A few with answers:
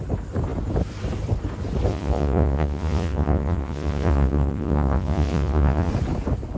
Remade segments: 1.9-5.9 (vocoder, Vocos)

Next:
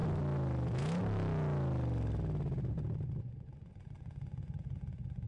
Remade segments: 3.2-5.3 (vocoder, Vocos)

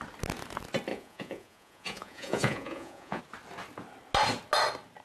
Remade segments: 0.9-3.2 (vocoder, Vocos)

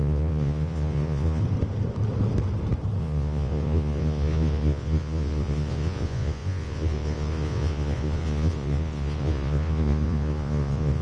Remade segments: 0.0-1.4 (vocoder, Vocos); 3.0-11.0

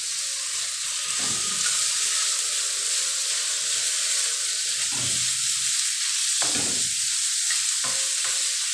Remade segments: none

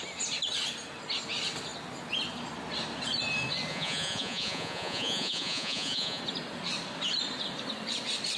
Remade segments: 3.7-6.2 (vocoder, Vocos)